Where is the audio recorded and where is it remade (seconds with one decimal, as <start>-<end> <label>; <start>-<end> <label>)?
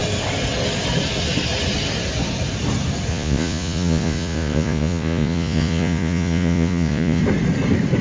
0.0-3.1 recorded; 3.1-7.2 remade; 7.2-8.0 recorded